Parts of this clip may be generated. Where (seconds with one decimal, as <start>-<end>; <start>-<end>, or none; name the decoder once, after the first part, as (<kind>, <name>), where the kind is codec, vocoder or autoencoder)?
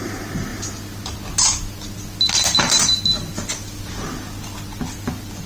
none